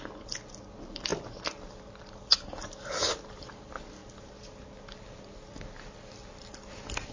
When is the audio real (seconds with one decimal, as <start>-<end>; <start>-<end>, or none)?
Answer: 0.0-7.1